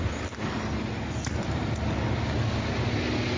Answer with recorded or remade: recorded